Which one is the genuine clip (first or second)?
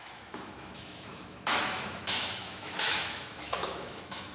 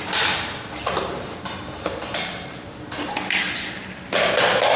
second